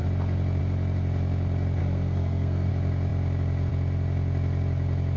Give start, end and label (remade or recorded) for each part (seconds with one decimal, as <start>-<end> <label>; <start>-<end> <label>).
0.0-1.8 recorded; 1.8-2.7 remade; 2.7-5.2 recorded